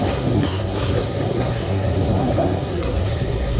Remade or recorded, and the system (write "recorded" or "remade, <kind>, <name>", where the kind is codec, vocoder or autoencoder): remade, codec, SNAC